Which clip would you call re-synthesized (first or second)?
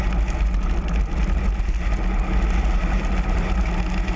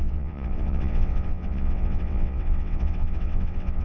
second